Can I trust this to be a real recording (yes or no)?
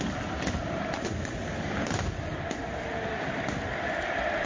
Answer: no